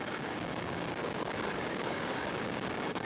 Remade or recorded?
remade